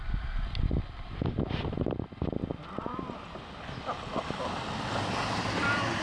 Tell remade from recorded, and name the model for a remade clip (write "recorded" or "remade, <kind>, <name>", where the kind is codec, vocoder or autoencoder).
recorded